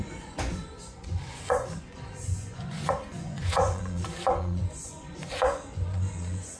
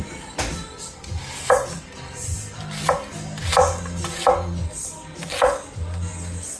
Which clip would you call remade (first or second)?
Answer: first